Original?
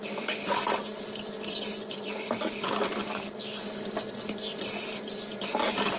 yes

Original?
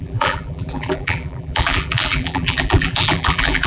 no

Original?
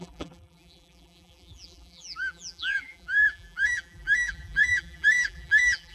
no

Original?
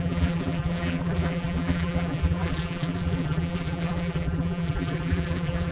no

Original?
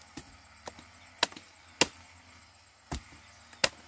yes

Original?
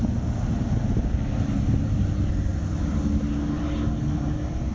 yes